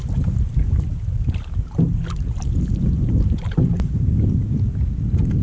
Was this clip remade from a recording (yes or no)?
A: no